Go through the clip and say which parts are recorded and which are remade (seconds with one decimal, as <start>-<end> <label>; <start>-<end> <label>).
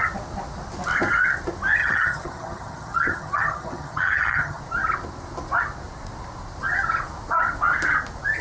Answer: 0.0-1.8 recorded; 1.8-4.6 remade; 4.6-8.4 recorded